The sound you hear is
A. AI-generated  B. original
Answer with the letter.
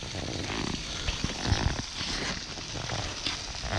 B